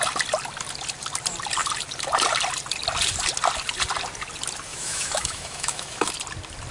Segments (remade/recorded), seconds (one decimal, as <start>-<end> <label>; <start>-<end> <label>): 0.0-4.7 recorded; 4.7-6.1 remade; 6.1-6.7 recorded